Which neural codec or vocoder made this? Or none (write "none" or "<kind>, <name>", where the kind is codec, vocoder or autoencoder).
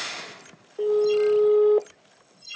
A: none